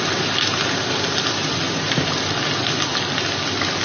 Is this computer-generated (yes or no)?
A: no